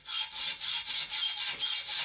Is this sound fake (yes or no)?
no